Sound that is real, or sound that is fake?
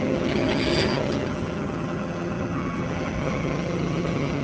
fake